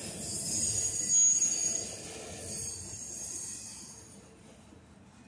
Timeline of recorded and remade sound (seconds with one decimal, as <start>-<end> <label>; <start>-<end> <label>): 0.0-5.3 recorded